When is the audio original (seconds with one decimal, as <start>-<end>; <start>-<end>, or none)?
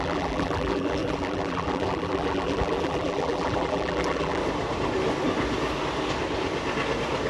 4.4-7.3